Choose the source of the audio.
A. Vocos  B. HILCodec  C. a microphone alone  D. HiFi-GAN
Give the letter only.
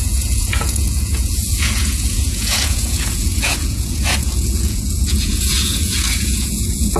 A